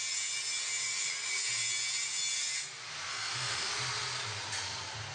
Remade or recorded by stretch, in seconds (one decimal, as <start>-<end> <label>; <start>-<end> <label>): 0.0-3.1 recorded; 3.1-3.7 remade; 3.7-5.1 recorded